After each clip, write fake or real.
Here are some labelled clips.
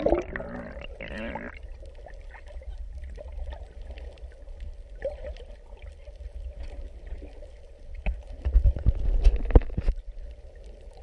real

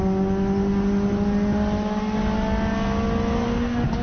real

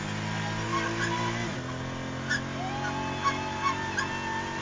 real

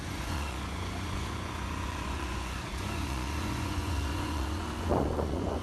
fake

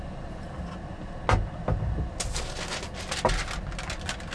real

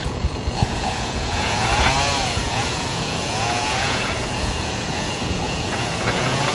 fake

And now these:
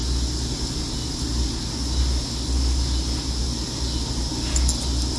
real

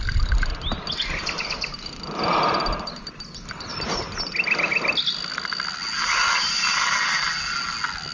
real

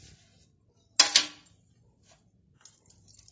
real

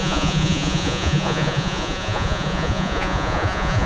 fake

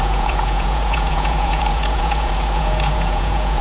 fake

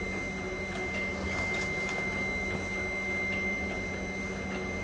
real